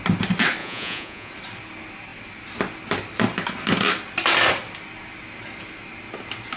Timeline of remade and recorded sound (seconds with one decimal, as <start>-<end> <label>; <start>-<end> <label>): 0.0-0.6 recorded; 0.6-1.3 remade; 1.3-6.6 recorded